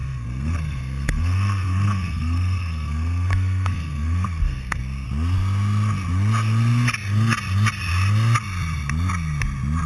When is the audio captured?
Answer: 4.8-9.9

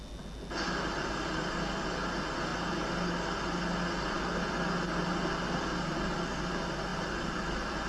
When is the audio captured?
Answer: 0.0-7.9